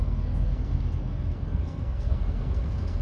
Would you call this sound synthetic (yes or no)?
yes